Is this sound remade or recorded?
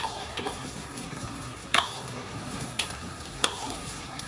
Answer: remade